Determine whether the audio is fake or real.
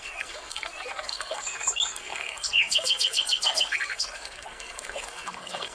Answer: fake